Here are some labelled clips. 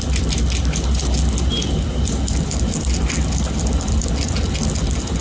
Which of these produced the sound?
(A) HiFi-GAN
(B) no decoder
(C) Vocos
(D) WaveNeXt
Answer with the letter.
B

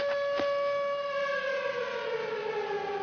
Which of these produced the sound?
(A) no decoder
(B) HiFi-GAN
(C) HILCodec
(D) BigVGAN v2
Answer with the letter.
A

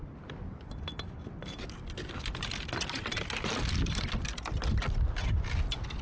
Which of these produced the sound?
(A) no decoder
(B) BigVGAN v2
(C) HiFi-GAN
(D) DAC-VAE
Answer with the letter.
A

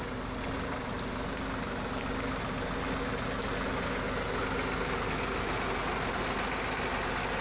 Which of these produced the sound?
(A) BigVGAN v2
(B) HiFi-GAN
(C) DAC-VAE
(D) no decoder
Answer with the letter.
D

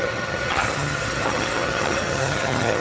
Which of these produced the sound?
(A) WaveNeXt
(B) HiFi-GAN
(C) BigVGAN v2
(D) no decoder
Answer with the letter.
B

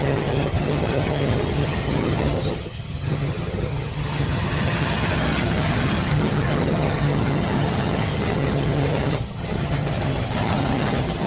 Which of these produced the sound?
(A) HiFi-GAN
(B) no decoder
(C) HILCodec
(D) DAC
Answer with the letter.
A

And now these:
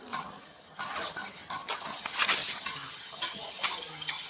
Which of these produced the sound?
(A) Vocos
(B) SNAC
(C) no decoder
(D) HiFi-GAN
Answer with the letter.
D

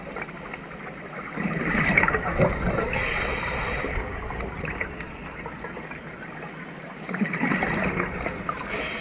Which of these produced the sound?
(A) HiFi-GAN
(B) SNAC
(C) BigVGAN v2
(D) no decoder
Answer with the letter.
D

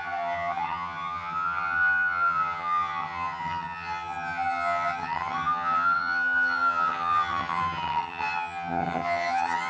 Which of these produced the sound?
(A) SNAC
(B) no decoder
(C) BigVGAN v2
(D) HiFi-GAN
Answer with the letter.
D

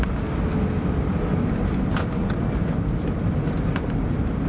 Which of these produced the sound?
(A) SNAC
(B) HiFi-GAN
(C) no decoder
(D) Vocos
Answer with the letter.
C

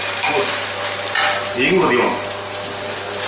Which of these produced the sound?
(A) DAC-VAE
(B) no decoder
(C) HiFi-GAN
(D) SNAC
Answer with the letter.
B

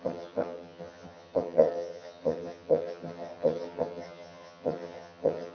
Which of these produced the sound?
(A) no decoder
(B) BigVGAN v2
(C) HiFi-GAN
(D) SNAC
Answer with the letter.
C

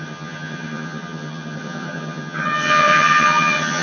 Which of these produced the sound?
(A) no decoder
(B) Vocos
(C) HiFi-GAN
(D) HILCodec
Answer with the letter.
C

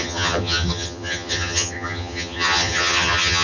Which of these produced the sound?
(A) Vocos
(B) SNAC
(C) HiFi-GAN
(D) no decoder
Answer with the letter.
C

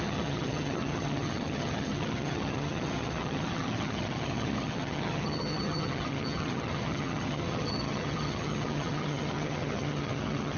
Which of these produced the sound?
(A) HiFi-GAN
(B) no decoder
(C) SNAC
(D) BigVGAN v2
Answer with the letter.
A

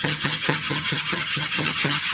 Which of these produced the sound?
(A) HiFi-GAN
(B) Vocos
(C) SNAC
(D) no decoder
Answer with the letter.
A